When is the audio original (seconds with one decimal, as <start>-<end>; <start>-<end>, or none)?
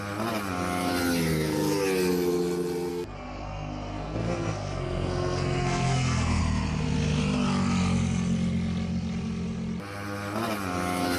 0.0-2.9; 6.4-11.2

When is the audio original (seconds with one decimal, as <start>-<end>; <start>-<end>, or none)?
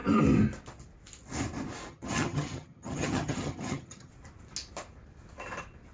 0.0-1.9; 4.1-5.9